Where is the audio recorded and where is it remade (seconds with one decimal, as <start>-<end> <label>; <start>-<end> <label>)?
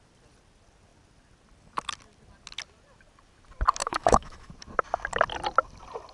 0.0-3.8 recorded; 3.8-4.5 remade; 4.5-6.1 recorded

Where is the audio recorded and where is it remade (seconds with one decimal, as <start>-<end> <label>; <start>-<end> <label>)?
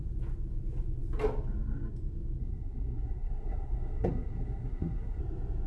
0.0-2.4 recorded; 2.4-5.2 remade; 5.2-5.7 recorded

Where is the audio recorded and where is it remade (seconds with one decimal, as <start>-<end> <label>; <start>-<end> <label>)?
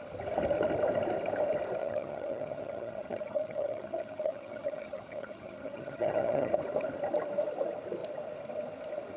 0.0-1.8 recorded; 1.8-6.5 remade; 6.5-9.2 recorded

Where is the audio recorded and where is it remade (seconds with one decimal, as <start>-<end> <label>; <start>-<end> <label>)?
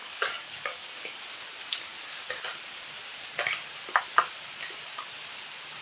0.0-1.2 remade; 1.2-5.8 recorded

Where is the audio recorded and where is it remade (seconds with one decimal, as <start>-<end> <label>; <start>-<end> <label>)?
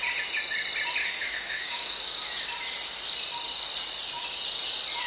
0.0-1.0 recorded; 1.0-2.0 remade; 2.0-5.1 recorded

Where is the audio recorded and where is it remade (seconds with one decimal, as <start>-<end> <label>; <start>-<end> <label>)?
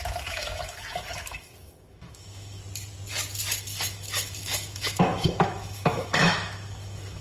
0.0-2.6 remade; 2.6-3.6 recorded; 3.6-7.2 remade